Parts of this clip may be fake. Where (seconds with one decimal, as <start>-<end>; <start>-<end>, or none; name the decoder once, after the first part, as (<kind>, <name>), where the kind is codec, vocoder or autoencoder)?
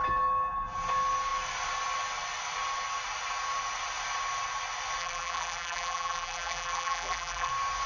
5.0-7.5 (vocoder, BigVGAN v2)